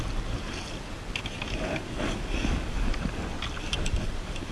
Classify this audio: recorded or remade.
recorded